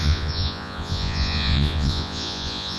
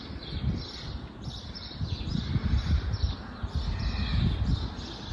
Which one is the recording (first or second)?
second